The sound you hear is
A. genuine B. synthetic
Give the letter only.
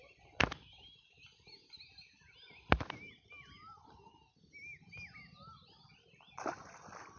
A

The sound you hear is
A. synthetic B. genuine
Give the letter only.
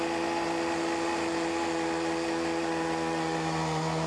B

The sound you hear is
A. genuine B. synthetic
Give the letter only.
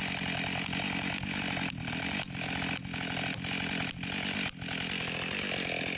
A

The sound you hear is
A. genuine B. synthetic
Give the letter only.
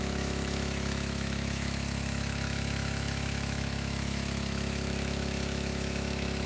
B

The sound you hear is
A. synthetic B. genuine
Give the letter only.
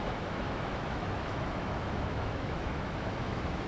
A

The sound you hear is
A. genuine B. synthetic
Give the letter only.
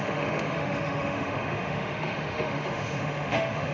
B